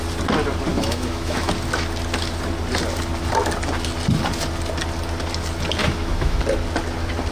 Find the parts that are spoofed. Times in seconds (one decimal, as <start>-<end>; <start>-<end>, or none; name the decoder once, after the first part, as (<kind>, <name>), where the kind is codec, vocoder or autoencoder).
0.7-1.5 (autoencoder, DAC-VAE); 5.8-6.4